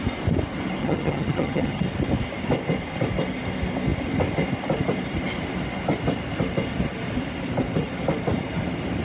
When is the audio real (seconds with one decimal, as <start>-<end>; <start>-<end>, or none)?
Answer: 0.0-0.8; 1.8-9.0